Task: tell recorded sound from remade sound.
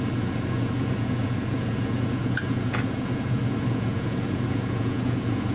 remade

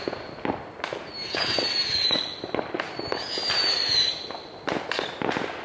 recorded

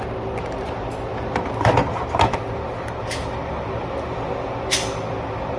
recorded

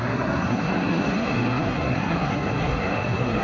remade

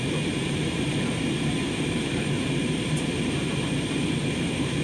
remade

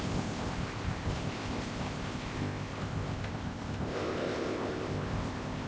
remade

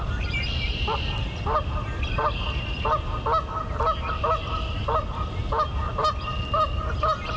recorded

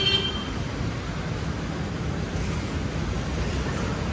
recorded